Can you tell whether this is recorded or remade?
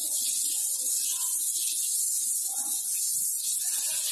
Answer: remade